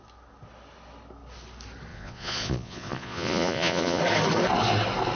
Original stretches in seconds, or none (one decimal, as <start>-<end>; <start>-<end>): 0.0-1.9; 4.0-5.2